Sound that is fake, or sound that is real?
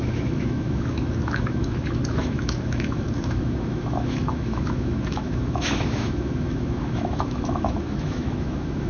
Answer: fake